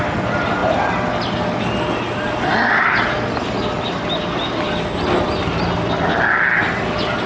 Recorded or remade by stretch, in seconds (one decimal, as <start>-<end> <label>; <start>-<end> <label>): 0.0-7.3 recorded